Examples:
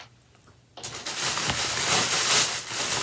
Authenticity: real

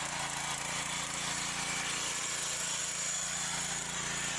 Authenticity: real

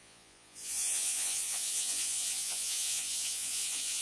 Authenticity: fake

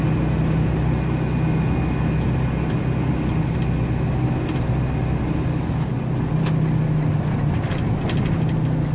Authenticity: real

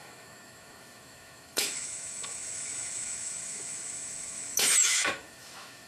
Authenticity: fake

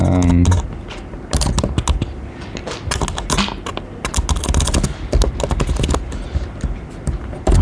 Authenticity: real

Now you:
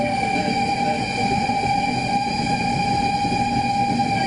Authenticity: real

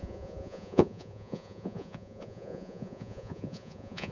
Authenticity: fake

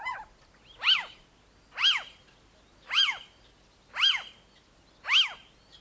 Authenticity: real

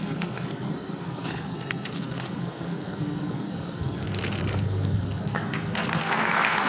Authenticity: fake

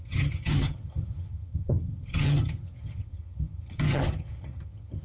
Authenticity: fake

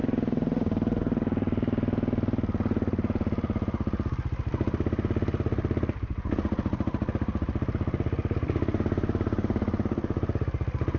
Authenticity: real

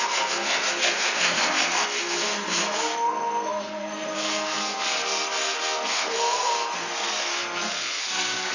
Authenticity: fake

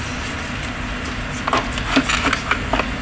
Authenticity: real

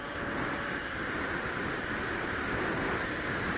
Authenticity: real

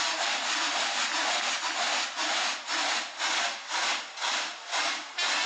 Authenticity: real